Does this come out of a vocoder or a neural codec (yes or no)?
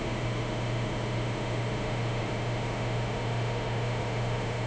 yes